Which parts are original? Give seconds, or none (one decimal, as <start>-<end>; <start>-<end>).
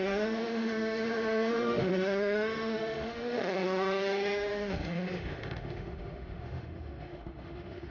none